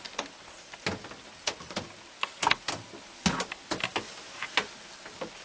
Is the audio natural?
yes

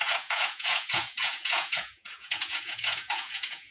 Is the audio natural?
no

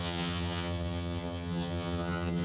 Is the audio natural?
no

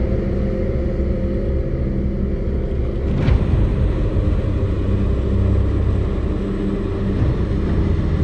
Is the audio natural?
yes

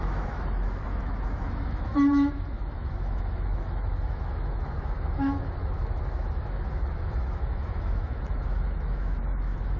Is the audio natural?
no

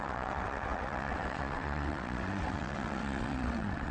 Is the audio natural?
no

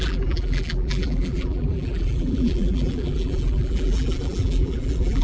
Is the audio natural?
no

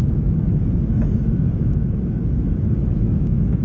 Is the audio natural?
no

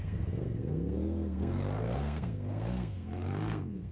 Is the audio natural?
no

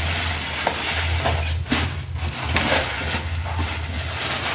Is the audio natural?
yes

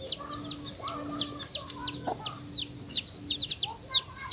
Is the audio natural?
yes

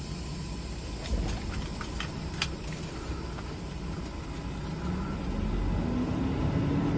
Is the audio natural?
yes